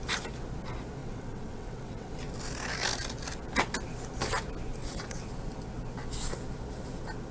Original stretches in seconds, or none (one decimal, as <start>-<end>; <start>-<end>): 0.0-1.0; 2.1-4.8; 5.3-7.3